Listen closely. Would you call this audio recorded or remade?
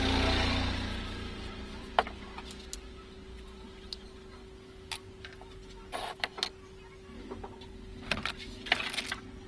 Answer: recorded